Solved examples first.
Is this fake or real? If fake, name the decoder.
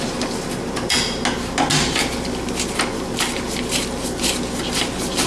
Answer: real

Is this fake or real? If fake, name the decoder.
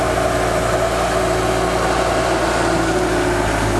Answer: real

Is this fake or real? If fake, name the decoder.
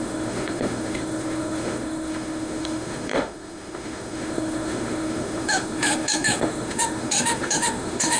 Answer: fake, autoencoder, DAC-VAE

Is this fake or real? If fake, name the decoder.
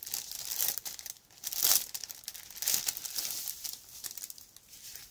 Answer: real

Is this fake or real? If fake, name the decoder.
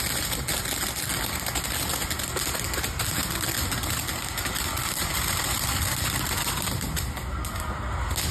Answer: real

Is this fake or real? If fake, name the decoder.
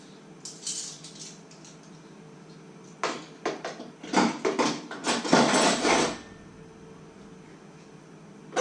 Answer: real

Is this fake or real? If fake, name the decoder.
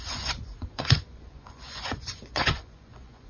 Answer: fake, vocoder, Vocos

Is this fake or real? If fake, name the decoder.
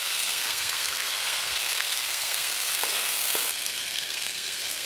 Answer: fake, codec, SNAC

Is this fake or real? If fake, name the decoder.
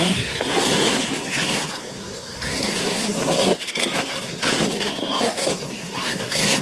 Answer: fake, codec, SNAC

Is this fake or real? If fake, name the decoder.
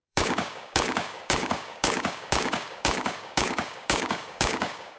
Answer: fake, codec, DAC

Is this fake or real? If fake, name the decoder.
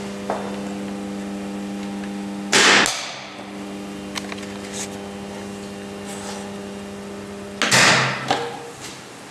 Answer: real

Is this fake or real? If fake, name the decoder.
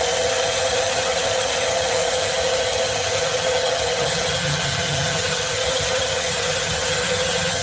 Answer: fake, vocoder, HiFi-GAN